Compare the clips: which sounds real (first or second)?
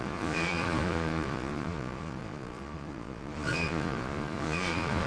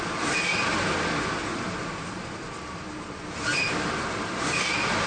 second